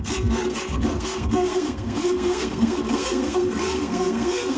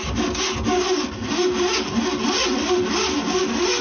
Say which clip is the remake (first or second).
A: first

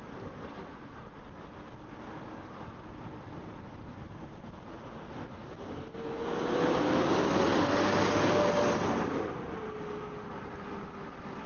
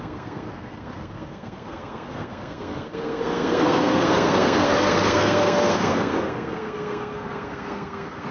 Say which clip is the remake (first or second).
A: second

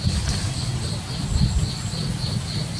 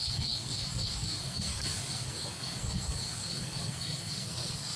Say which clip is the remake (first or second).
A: second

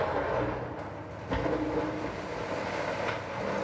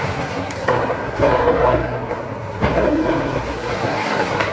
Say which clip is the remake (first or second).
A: second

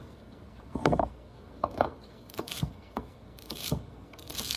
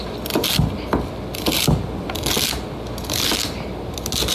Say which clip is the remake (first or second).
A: first